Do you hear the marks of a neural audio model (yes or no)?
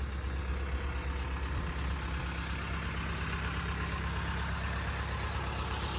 no